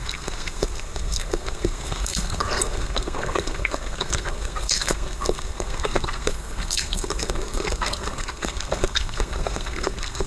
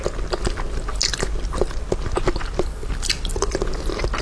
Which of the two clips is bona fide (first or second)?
second